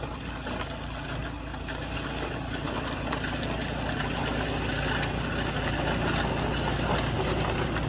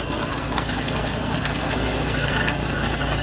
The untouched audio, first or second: first